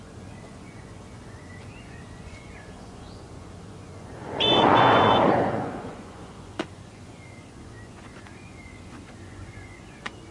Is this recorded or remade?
remade